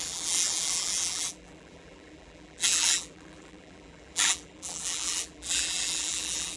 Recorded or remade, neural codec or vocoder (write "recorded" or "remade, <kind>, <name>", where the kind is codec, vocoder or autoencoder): remade, vocoder, BigVGAN v2